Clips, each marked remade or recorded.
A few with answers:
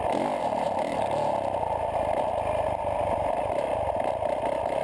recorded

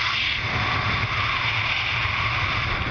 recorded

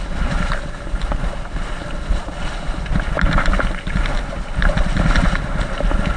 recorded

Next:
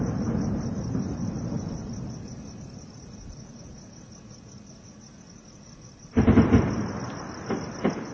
recorded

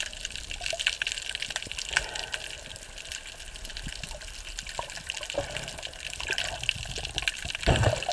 recorded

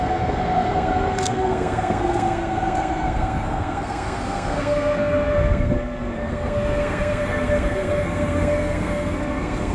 remade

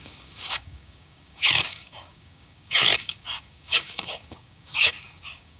remade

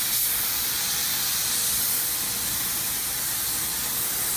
recorded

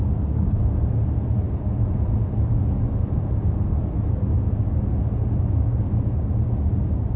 recorded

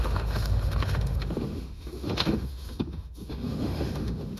remade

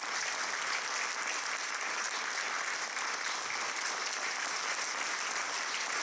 recorded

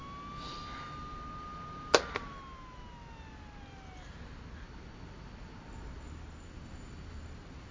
recorded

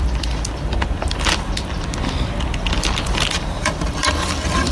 remade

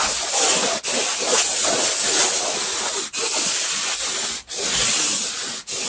recorded